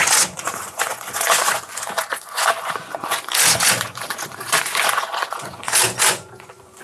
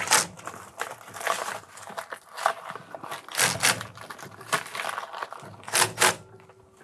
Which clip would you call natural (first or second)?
second